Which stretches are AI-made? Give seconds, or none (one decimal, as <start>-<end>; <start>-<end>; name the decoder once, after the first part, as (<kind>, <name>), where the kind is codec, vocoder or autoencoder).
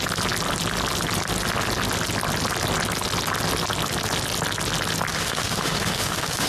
5.1-6.5 (autoencoder, DAC-VAE)